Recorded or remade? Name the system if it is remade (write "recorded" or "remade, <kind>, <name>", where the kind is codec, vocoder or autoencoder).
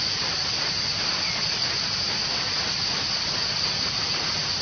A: recorded